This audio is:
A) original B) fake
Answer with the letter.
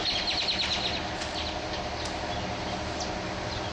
A